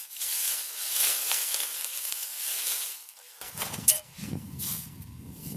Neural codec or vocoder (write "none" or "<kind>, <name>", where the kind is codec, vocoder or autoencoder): codec, SNAC